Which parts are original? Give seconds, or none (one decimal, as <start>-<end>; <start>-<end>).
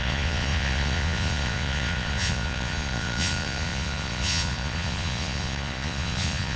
none